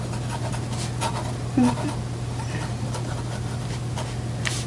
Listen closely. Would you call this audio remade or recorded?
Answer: recorded